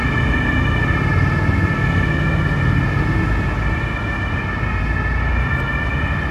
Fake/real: real